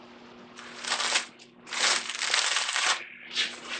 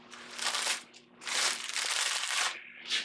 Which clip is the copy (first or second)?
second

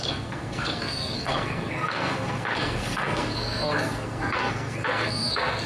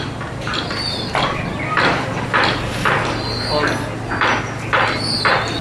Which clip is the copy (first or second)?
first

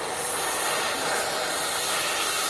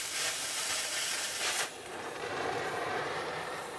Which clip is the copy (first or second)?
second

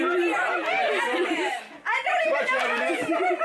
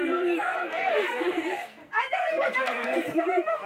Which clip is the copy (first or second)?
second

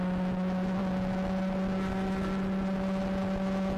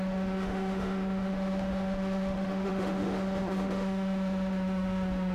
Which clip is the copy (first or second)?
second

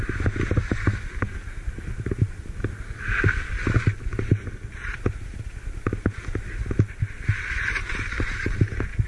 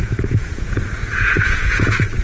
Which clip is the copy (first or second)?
second